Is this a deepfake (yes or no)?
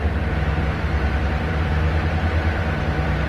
yes